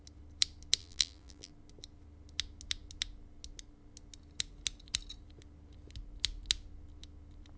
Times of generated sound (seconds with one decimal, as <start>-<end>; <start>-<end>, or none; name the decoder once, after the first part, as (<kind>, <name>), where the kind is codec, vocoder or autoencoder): 0.8-1.5 (vocoder, BigVGAN v2)